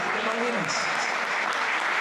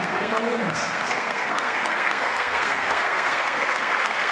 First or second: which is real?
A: first